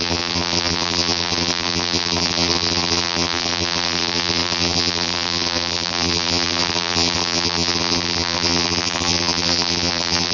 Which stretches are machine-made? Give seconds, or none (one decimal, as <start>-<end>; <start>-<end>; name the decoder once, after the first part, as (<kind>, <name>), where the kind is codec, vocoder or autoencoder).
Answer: 0.0-10.3 (vocoder, BigVGAN v2)